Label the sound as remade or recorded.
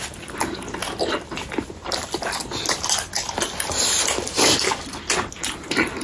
remade